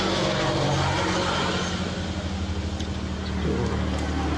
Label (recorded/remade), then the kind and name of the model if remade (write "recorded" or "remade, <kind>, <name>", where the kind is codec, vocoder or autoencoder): recorded